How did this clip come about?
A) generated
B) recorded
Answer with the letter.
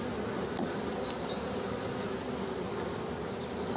B